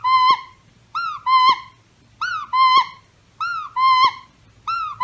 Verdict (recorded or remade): recorded